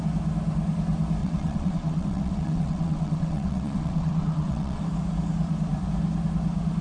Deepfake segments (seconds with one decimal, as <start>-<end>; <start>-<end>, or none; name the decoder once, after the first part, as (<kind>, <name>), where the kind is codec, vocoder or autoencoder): 1.2-4.8 (vocoder, WaveNeXt)